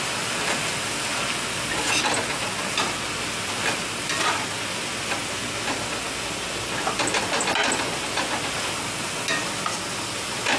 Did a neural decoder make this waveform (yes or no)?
no